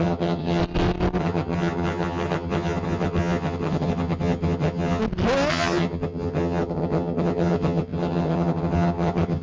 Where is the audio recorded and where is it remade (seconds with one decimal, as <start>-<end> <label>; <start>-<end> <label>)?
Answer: 0.0-0.6 remade; 0.6-1.2 recorded; 1.2-5.0 remade; 5.0-5.5 recorded; 5.5-9.4 remade